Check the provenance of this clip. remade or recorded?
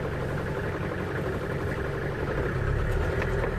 recorded